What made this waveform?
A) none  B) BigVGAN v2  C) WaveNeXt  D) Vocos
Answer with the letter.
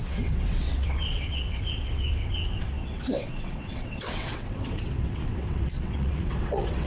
C